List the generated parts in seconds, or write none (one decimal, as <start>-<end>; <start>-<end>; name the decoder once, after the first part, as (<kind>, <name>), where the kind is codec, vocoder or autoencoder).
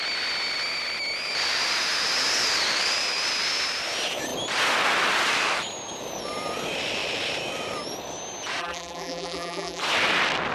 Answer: 8.6-9.8 (vocoder, BigVGAN v2)